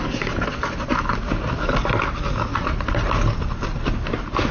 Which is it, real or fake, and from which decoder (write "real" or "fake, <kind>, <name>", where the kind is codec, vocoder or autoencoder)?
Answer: real